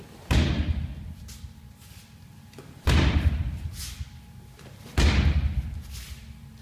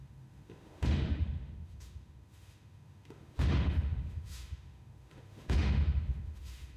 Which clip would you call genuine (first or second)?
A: first